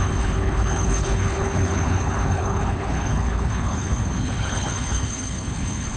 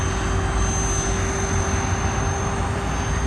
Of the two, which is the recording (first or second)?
second